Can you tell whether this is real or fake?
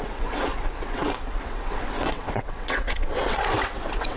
fake